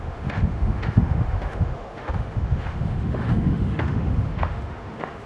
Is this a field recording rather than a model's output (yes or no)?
no